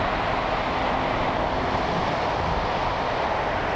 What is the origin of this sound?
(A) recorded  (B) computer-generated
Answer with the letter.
A